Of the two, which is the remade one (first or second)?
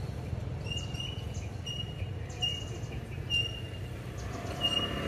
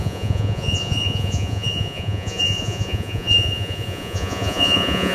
second